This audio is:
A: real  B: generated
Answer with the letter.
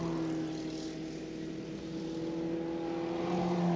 A